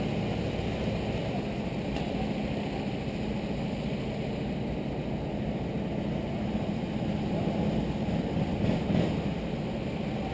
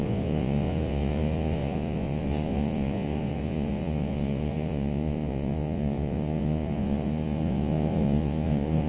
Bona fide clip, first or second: first